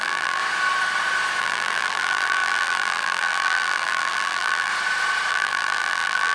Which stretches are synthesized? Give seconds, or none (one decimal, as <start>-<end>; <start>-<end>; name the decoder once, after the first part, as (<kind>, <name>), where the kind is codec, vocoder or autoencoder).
0.0-0.4 (vocoder, BigVGAN v2); 1.4-4.7; 5.3-6.3